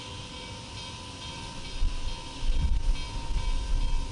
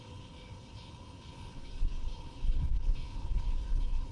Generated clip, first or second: second